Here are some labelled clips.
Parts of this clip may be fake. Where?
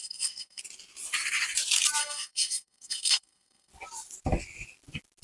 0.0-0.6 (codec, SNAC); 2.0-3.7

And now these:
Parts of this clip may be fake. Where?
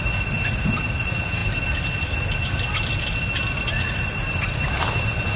none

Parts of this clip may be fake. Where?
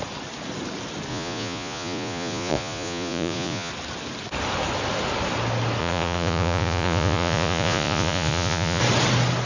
1.1-3.7 (vocoder, Vocos); 5.8-8.8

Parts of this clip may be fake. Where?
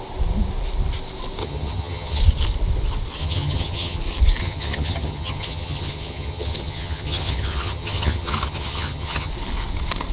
1.4-2.2 (vocoder, HiFi-GAN); 3.2-4.0; 4.4-9.3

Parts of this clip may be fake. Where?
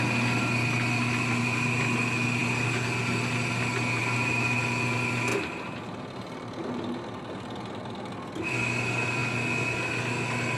5.3-8.1 (vocoder, BigVGAN v2)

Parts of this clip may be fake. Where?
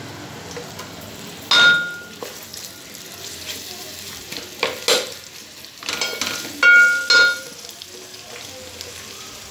none